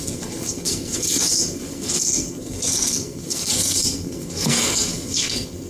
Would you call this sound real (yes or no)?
no